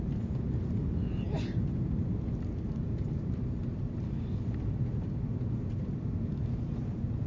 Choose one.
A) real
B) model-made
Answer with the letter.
A